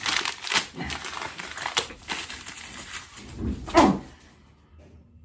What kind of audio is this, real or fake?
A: real